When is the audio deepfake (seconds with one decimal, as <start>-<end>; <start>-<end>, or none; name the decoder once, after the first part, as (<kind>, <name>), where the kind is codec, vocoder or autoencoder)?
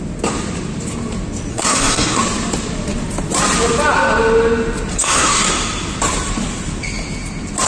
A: 1.5-2.2 (codec, SNAC); 4.9-5.5